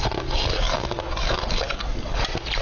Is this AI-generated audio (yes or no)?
no